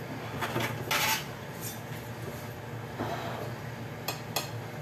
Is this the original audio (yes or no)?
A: yes